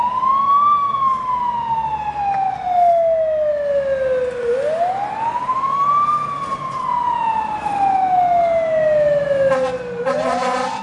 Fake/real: real